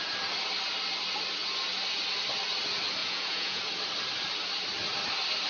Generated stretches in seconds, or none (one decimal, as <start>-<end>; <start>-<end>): 3.0-3.6